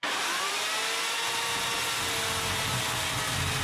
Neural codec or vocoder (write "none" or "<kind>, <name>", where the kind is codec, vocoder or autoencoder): none